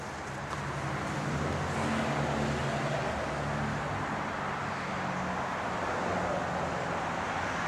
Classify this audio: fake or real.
real